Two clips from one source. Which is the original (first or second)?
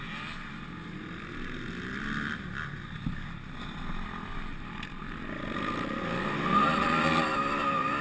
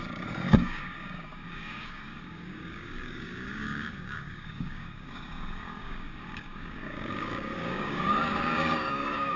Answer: first